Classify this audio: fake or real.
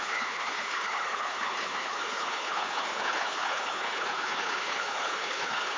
fake